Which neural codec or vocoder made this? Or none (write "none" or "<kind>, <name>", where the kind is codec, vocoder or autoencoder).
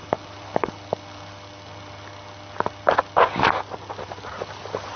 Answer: none